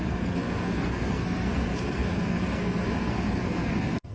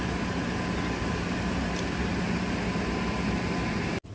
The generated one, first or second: first